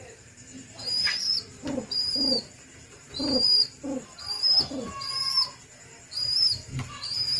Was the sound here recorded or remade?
remade